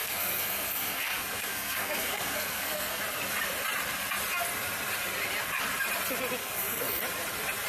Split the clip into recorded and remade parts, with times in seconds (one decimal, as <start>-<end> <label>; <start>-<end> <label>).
0.0-3.0 remade; 3.0-6.4 recorded; 6.4-7.0 remade; 7.0-7.7 recorded